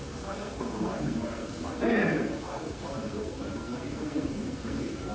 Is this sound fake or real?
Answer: fake